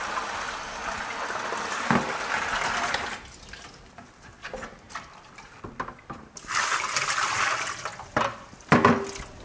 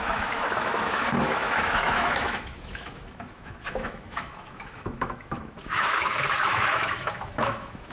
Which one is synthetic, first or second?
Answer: second